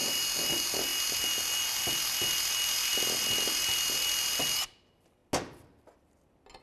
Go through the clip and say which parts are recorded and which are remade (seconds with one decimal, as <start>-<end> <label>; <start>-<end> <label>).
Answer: 0.0-6.6 recorded